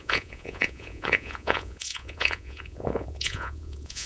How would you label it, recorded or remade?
remade